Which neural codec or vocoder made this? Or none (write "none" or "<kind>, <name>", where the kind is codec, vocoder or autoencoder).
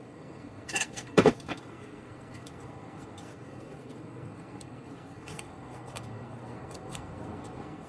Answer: codec, SNAC